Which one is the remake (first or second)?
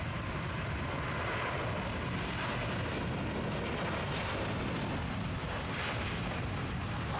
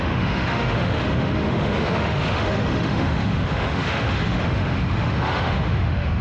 second